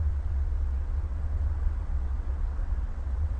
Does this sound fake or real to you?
fake